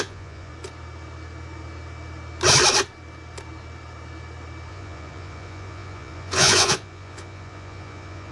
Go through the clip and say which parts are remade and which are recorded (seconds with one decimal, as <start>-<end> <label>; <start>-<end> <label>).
0.0-0.5 remade; 0.5-4.7 recorded; 4.7-8.3 remade